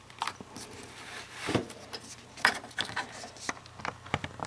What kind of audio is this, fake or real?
real